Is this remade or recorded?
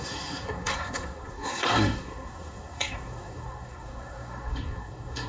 remade